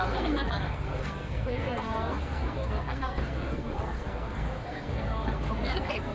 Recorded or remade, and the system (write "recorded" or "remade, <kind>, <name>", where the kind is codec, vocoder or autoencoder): remade, codec, SNAC